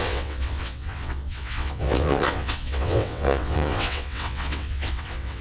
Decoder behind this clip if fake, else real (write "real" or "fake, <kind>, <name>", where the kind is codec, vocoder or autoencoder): fake, vocoder, WaveNeXt